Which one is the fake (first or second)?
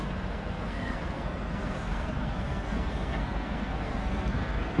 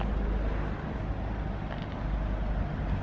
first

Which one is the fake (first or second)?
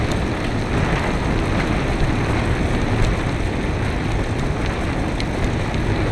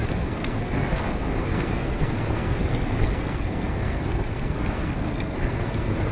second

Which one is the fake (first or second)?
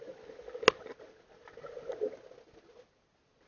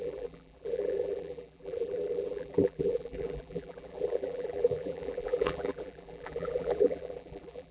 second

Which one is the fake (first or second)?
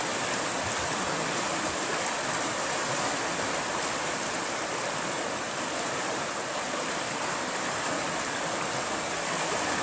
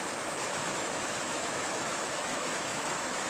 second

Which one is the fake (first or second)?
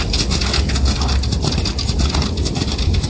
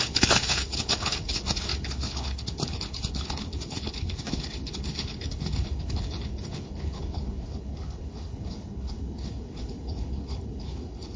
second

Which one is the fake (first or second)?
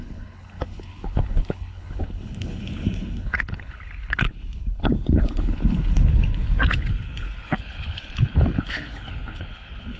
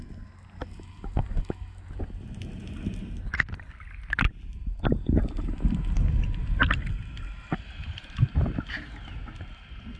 first